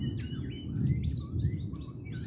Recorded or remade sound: recorded